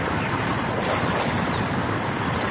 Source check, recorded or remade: recorded